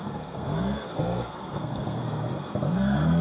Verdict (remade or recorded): remade